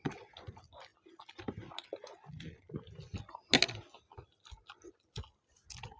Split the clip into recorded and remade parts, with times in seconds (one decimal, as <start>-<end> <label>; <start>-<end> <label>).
0.0-6.0 recorded